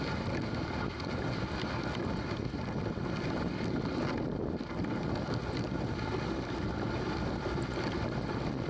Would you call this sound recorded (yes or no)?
yes